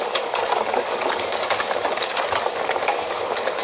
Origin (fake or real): fake